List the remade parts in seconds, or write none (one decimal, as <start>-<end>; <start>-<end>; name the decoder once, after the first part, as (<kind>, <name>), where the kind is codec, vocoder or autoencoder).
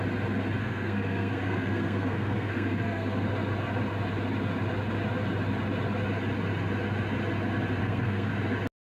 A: 0.6-3.3 (codec, SNAC); 7.8-8.3